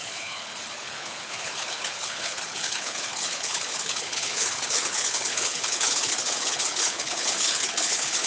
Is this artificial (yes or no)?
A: yes